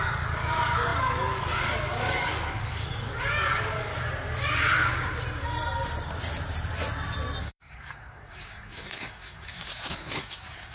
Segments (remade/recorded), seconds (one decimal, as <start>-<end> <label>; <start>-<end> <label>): 0.0-3.9 remade; 3.9-7.4 recorded; 7.4-10.7 remade